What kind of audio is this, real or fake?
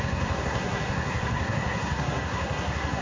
fake